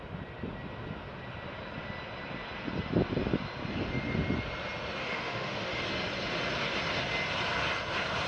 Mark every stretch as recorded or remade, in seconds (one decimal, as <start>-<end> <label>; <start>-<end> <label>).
0.0-5.0 recorded; 5.0-5.8 remade; 5.8-8.3 recorded